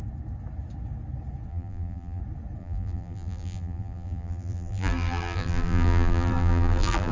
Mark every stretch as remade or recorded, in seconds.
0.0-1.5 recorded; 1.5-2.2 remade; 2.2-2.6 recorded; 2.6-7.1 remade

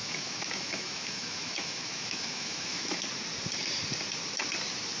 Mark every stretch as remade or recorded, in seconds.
0.0-3.0 remade; 3.0-5.0 recorded

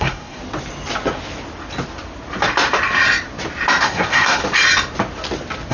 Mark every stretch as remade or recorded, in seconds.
0.0-0.4 remade; 0.4-3.8 recorded; 3.8-4.4 remade; 4.4-5.7 recorded

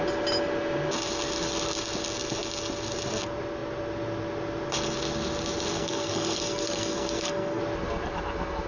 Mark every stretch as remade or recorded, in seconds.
0.0-5.7 recorded; 5.7-7.6 remade; 7.6-8.7 recorded

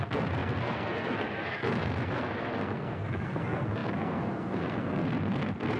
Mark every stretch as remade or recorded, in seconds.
0.0-5.8 remade

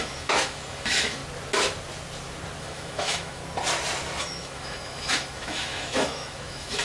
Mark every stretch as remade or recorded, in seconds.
0.0-1.2 remade; 1.2-2.6 recorded; 2.6-3.4 remade; 3.4-4.2 recorded; 4.2-6.8 remade

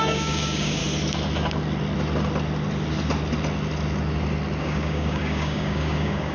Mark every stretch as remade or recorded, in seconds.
0.0-0.8 remade; 0.8-4.6 recorded; 4.6-6.3 remade